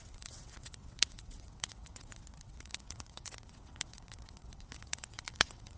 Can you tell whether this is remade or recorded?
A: remade